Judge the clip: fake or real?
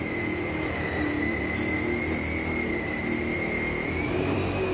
real